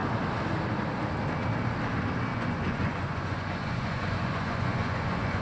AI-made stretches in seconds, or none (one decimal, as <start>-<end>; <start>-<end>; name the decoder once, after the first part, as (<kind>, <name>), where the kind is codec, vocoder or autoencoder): 2.3-5.4 (vocoder, Vocos)